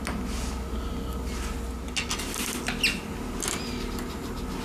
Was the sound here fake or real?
real